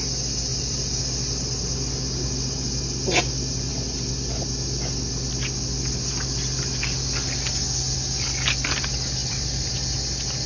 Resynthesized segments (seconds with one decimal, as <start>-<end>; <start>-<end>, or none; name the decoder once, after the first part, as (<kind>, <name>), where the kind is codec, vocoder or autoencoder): 0.5-1.0 (vocoder, BigVGAN v2); 9.2-9.7